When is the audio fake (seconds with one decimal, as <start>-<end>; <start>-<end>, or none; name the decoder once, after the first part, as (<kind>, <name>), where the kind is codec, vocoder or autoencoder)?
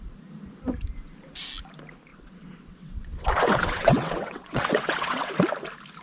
2.1-5.3 (vocoder, WaveNeXt)